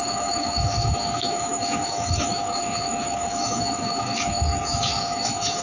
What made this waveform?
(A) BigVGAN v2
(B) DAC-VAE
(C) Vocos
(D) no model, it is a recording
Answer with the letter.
B